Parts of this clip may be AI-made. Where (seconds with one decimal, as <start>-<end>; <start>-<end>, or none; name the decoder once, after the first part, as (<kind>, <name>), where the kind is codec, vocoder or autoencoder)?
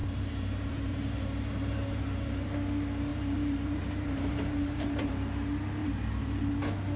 0.0-2.5 (vocoder, BigVGAN v2); 3.1-5.3; 5.8-6.5